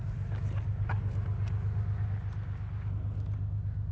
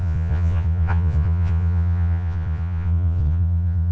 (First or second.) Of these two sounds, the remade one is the second